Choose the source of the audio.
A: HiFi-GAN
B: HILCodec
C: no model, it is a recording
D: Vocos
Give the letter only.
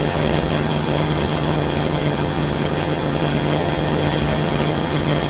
A